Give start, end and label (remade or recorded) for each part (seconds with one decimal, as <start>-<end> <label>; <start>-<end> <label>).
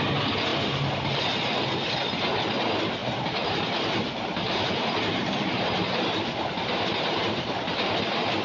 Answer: 0.0-3.0 recorded; 3.0-8.0 remade; 8.0-8.4 recorded